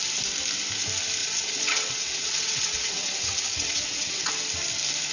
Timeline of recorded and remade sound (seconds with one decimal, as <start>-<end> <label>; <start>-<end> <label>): 0.0-1.2 recorded; 1.2-4.3 remade; 4.3-5.1 recorded